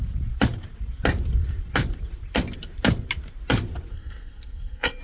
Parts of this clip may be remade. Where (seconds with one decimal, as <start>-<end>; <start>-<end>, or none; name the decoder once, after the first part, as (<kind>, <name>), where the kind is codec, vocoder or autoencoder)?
3.9-5.0 (codec, SNAC)